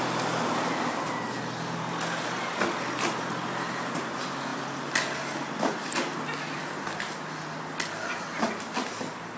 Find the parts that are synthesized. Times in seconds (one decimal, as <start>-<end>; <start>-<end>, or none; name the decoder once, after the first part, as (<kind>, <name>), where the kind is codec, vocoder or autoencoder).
none